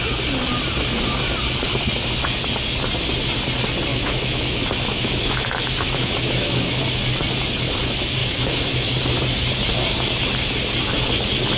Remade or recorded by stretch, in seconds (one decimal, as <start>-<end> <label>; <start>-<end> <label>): 0.0-3.9 recorded; 3.9-6.8 remade; 6.8-8.2 recorded; 8.2-8.9 remade; 8.9-11.6 recorded